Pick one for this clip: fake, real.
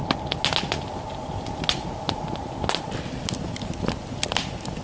real